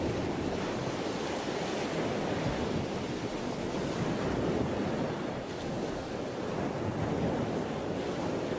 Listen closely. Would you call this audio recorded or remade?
recorded